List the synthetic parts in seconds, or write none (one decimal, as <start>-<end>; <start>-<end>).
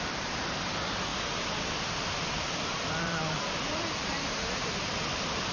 0.0-1.1; 2.9-5.5